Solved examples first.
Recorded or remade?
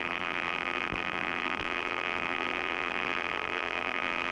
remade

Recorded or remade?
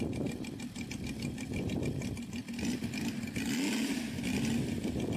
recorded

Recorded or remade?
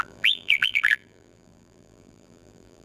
remade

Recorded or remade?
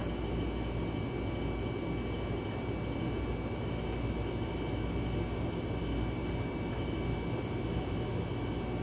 recorded